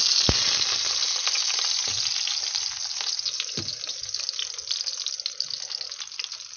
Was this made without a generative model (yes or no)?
yes